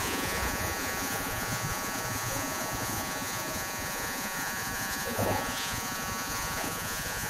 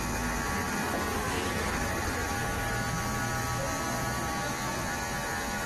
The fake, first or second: first